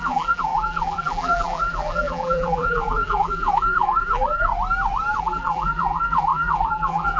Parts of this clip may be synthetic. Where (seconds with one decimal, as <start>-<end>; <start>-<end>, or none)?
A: 0.0-4.5; 5.2-7.2